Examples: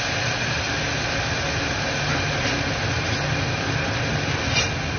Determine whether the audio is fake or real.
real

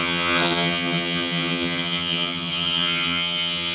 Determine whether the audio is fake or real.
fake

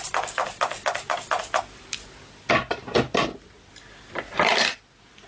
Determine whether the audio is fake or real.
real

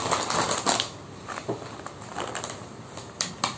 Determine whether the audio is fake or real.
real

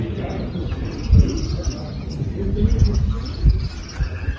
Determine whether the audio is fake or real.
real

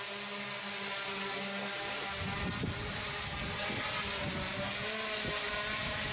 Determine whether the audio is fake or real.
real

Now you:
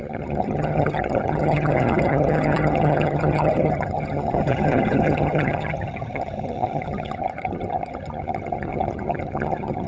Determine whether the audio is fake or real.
fake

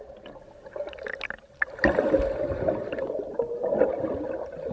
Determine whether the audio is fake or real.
real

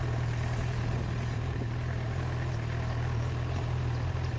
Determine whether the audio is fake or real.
real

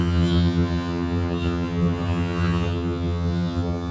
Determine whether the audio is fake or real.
fake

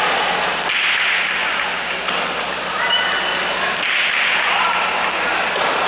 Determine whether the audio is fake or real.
real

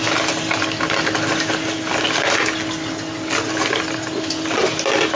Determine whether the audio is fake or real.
real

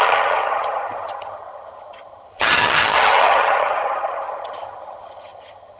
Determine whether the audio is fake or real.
fake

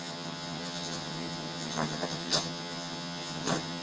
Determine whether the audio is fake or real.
fake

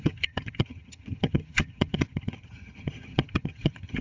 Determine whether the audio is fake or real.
fake